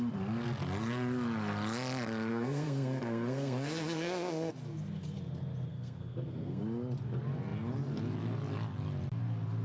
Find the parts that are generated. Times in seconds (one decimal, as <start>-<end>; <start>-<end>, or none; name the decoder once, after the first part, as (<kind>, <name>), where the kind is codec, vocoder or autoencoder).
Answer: 2.3-4.5 (codec, SNAC); 5.7-6.6